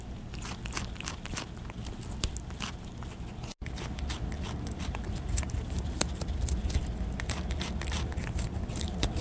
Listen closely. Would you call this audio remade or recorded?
recorded